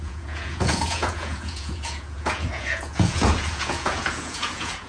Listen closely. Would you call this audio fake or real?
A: fake